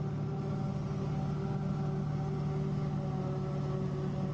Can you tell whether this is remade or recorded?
recorded